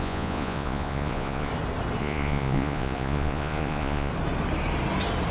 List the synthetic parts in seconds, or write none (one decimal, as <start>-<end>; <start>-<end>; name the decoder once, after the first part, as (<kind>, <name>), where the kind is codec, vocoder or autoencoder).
0.0-1.5 (vocoder, Vocos); 2.0-4.1